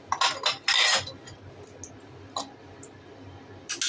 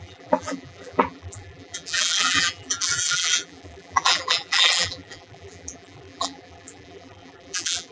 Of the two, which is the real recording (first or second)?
first